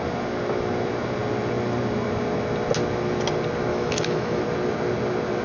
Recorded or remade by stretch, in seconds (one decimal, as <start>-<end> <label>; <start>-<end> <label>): 0.0-3.7 recorded; 3.7-4.4 remade; 4.4-5.4 recorded